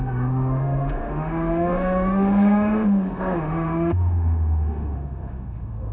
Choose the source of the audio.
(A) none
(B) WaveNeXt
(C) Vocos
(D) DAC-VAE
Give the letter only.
D